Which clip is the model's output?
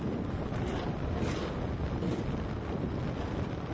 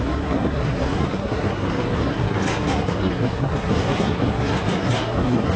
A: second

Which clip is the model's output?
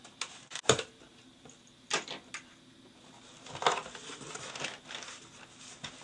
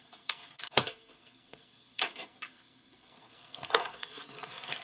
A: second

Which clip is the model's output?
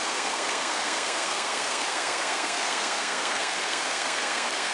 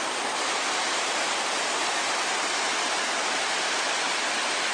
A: first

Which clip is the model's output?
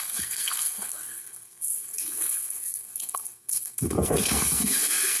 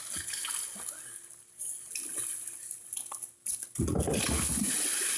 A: first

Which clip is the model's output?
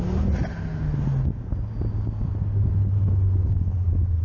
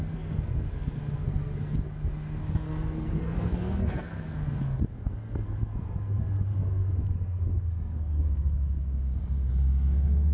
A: second